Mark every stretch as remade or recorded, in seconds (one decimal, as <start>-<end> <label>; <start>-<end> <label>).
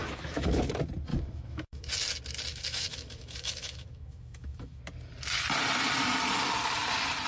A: 0.0-0.6 remade; 0.6-1.1 recorded; 1.1-1.9 remade; 1.9-2.5 recorded; 2.5-4.8 remade; 4.8-7.3 recorded